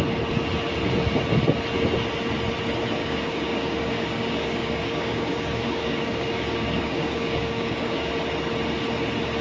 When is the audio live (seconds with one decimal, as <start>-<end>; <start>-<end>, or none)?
0.0-3.0; 8.1-9.4